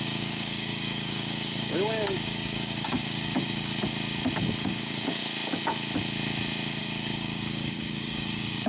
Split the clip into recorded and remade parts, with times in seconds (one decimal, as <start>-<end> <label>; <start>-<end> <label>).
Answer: 0.0-3.7 remade; 3.7-4.6 recorded; 4.6-5.2 remade; 5.2-6.8 recorded; 6.8-8.7 remade